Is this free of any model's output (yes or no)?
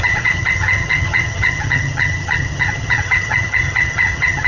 no